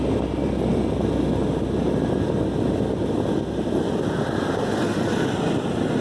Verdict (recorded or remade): recorded